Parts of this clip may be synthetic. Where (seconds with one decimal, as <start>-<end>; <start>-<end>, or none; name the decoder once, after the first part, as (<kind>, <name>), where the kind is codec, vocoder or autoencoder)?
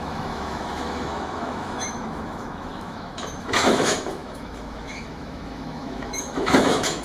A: 0.0-7.0 (autoencoder, DAC-VAE)